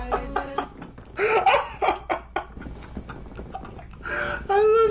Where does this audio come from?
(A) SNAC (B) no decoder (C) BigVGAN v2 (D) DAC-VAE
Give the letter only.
B